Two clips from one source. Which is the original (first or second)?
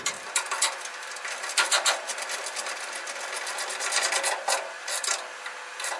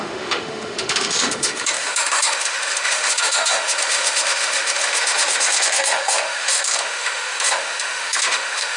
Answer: first